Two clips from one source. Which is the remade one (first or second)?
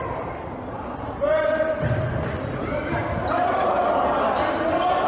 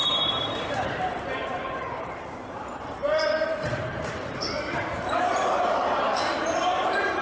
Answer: second